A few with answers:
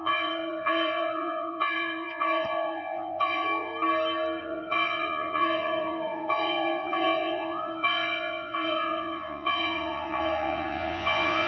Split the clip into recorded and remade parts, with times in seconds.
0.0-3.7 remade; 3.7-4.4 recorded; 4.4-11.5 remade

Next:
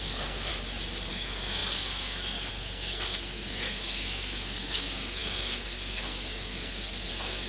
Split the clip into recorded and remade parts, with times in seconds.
0.0-0.5 remade; 0.5-1.1 recorded; 1.1-7.5 remade

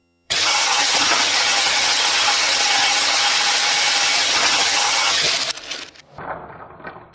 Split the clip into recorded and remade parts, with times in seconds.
0.0-3.2 remade; 3.2-4.2 recorded; 4.2-5.3 remade; 5.3-7.1 recorded

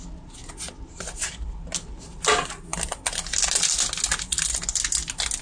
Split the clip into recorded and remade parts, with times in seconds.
0.0-5.4 recorded

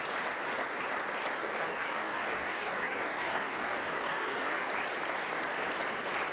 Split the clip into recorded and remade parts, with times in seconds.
0.0-1.4 recorded; 1.4-4.7 remade; 4.7-6.3 recorded

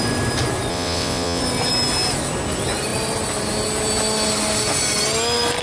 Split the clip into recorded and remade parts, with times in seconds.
0.0-0.7 recorded; 0.7-1.4 remade; 1.4-5.6 recorded

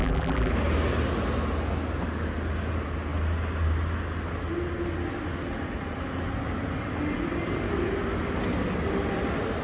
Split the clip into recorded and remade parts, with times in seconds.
0.0-0.5 remade; 0.5-9.6 recorded